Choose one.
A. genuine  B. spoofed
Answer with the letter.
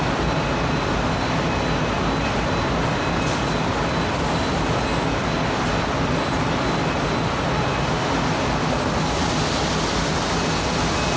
A